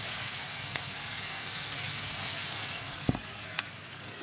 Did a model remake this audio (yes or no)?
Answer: yes